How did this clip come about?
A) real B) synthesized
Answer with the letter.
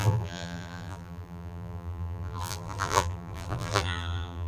B